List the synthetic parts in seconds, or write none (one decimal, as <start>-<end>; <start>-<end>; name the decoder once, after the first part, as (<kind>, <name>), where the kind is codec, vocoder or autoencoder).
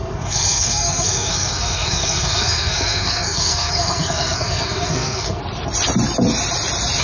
0.0-5.4 (codec, SNAC)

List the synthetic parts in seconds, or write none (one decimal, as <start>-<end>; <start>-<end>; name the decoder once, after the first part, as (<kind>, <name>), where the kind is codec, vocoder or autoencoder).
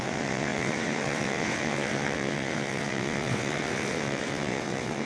0.0-5.1 (vocoder, WaveNeXt)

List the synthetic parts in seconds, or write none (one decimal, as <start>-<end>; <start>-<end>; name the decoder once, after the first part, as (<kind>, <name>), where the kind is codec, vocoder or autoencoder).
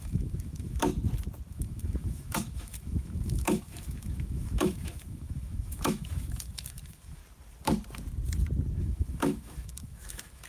0.0-0.8 (autoencoder, DAC-VAE); 1.5-7.2; 8.8-10.5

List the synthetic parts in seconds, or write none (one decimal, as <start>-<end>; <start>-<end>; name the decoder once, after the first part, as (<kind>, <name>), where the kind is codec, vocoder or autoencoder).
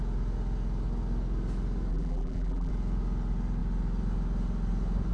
1.9-2.7 (vocoder, BigVGAN v2)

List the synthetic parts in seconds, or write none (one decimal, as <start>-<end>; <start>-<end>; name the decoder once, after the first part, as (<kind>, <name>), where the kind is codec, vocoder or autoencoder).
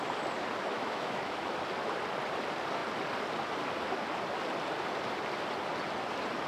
0.6-1.5 (autoencoder, DAC-VAE)